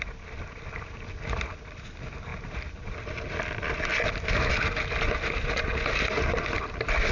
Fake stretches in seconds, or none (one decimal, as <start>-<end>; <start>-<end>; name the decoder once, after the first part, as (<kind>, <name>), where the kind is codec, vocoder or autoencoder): 2.3-3.3 (vocoder, BigVGAN v2)